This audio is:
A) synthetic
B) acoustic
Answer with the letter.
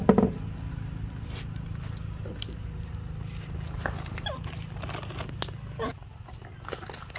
B